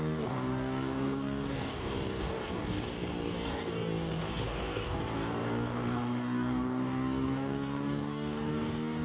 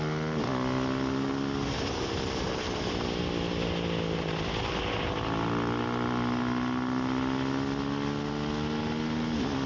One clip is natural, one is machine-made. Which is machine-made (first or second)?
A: first